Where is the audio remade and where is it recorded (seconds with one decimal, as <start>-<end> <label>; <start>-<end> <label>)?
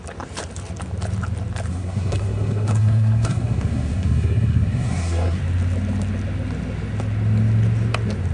0.0-1.7 recorded; 1.7-5.4 remade; 5.4-8.3 recorded